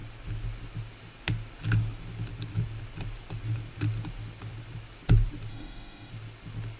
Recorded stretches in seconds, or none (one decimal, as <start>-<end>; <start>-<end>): 0.0-5.5; 6.1-6.8